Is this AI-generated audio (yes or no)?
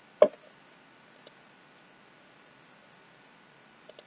no